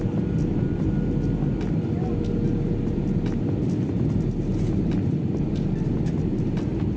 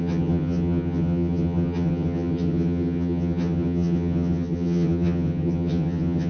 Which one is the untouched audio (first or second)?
first